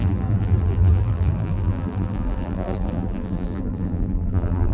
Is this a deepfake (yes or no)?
yes